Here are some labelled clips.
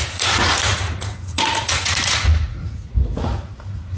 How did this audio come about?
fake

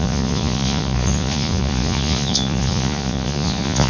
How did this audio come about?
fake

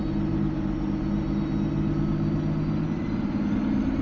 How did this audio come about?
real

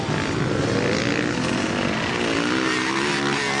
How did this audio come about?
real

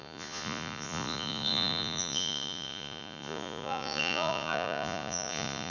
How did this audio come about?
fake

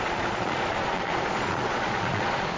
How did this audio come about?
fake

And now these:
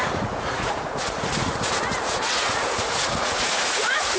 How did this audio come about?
fake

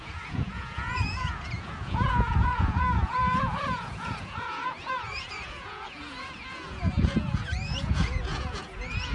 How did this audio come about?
fake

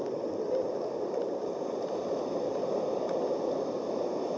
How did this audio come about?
real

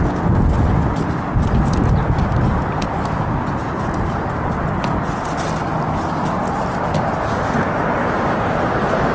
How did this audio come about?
real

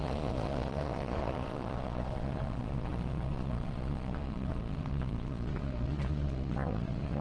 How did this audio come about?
fake